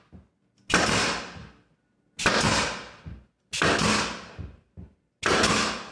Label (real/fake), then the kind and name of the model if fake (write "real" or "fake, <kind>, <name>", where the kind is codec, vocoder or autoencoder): real